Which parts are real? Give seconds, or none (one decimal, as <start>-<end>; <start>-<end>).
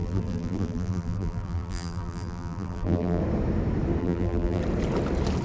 3.2-4.0; 4.6-5.4